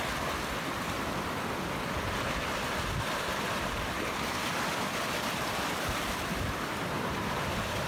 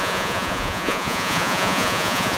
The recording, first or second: first